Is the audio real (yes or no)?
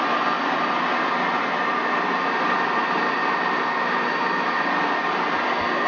yes